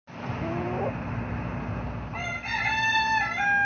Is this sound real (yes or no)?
yes